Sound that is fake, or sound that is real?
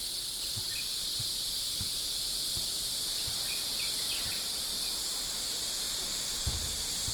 real